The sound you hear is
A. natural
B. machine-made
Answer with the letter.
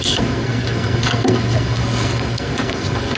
B